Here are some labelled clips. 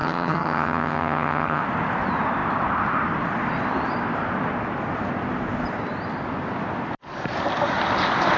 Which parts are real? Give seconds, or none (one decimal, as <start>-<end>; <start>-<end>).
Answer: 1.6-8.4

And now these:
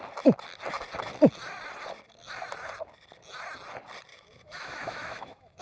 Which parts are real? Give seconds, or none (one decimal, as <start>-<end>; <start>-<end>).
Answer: 0.0-4.1

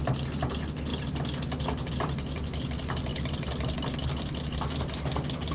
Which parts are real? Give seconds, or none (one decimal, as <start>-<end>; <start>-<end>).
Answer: 0.0-5.5

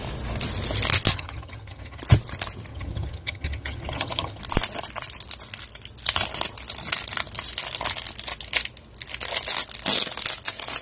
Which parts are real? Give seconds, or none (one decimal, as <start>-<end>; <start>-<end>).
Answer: 0.0-1.1; 2.0-2.7; 4.4-10.8

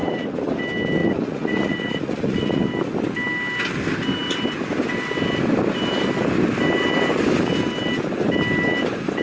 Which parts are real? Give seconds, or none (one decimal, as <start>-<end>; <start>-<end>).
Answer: 0.5-1.0; 2.6-9.2

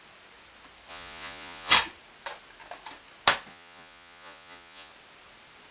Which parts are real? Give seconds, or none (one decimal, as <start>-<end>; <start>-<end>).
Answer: 0.0-0.9; 1.7-3.5; 4.9-5.7